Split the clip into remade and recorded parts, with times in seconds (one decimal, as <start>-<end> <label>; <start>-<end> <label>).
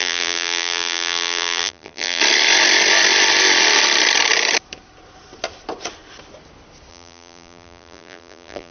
0.0-2.2 remade; 2.2-6.9 recorded; 6.9-8.7 remade